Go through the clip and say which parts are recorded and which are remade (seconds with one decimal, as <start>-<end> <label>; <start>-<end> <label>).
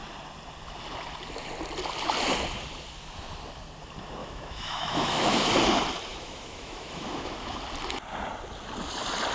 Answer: 0.0-4.2 recorded; 4.2-5.5 remade; 5.5-6.1 recorded; 6.1-7.6 remade; 7.6-9.3 recorded